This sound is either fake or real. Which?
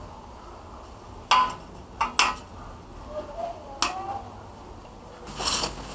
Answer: real